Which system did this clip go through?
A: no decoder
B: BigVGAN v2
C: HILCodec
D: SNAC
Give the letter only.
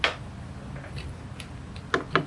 A